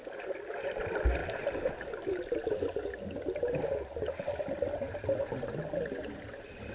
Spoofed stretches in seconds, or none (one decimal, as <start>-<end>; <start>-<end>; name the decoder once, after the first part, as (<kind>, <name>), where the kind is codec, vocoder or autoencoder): none